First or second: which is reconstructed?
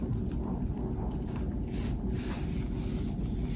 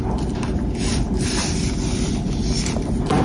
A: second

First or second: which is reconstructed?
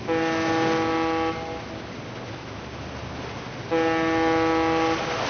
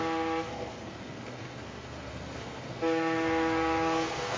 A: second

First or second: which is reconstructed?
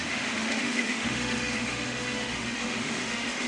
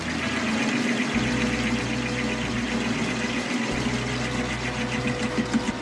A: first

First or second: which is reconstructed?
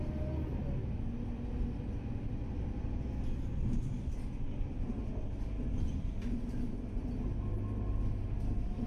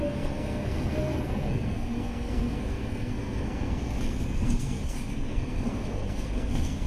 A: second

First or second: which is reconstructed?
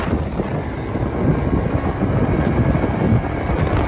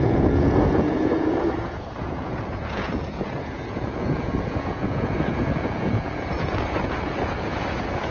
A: second